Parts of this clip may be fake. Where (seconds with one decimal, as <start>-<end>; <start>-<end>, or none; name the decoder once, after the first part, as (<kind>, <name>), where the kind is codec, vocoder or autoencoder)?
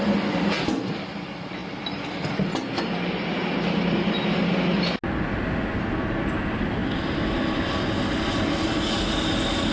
none